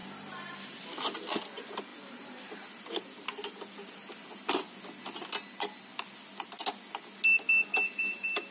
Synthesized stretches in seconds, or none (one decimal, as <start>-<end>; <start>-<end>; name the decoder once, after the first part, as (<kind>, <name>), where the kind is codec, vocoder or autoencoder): 0.0-1.3 (vocoder, BigVGAN v2); 1.9-2.9